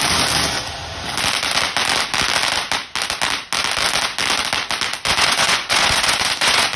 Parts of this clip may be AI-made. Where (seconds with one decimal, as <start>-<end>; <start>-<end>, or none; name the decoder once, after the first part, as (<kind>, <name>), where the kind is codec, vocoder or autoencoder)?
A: 5.1-6.8 (vocoder, Vocos)